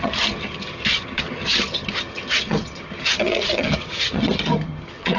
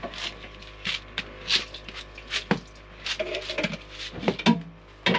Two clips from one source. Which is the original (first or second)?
second